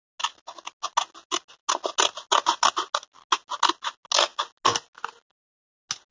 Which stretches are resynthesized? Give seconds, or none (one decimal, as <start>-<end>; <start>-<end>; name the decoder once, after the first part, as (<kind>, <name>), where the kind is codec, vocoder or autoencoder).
none